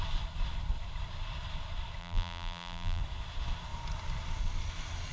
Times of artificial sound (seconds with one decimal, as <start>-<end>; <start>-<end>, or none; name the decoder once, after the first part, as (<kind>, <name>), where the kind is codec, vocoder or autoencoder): 2.0-3.0 (vocoder, BigVGAN v2)